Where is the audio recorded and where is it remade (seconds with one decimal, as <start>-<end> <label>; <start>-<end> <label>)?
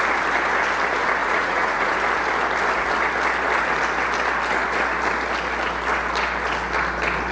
0.0-1.2 recorded; 1.2-1.9 remade; 1.9-7.3 recorded